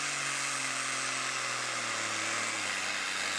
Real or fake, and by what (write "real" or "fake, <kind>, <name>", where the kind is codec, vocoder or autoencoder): real